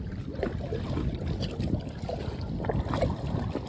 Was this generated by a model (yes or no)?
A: no